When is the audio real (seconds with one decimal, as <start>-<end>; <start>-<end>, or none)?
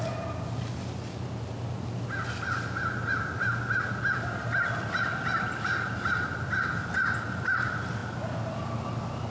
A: 0.0-9.3